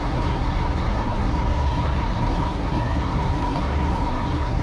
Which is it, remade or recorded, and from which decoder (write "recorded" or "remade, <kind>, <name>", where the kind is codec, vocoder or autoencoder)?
remade, codec, SNAC